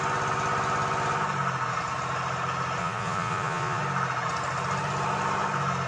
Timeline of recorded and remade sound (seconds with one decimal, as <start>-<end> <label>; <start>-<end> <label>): 0.0-2.8 recorded; 2.8-3.8 remade; 3.8-5.9 recorded